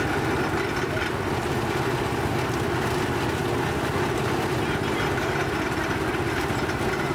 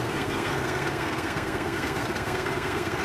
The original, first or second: first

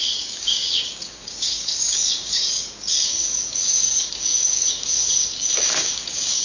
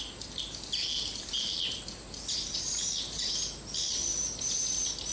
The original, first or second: second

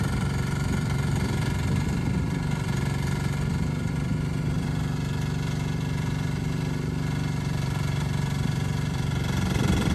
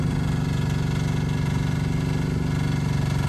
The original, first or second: second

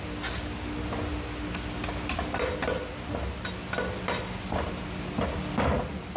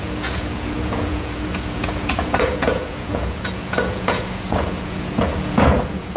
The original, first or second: first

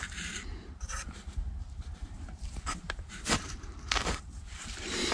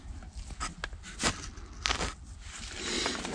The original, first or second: second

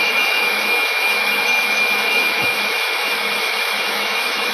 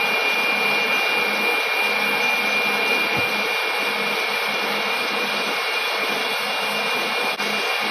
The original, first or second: second